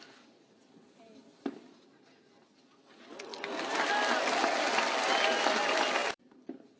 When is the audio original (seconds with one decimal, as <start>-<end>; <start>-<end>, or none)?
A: 0.0-3.3; 4.1-6.0